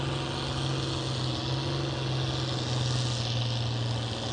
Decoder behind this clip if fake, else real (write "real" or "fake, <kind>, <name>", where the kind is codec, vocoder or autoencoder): real